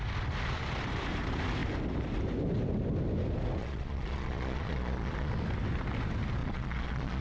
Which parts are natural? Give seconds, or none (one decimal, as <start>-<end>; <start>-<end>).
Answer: 0.0-3.6; 5.3-6.4